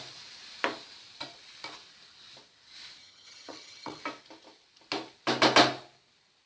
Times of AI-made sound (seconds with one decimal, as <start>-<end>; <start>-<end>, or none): 3.0-4.0